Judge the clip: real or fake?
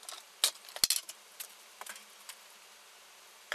real